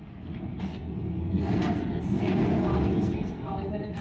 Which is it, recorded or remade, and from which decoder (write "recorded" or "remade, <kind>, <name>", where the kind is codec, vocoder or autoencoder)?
remade, codec, SNAC